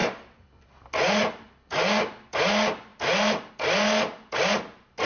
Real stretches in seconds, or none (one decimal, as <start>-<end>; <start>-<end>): 0.0-5.1